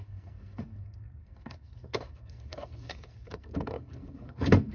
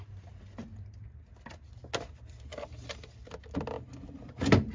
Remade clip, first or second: first